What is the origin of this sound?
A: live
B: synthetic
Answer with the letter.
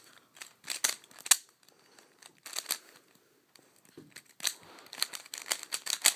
A